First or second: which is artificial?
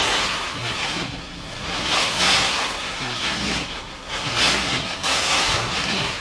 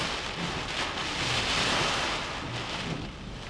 first